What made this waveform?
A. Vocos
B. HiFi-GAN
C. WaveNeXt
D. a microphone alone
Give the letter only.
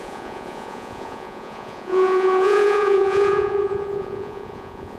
A